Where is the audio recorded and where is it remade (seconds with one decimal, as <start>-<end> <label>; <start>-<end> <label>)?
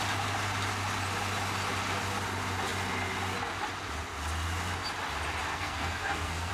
0.0-5.5 recorded; 5.5-6.5 remade